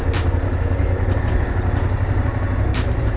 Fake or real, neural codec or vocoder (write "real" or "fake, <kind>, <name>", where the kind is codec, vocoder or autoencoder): fake, vocoder, BigVGAN v2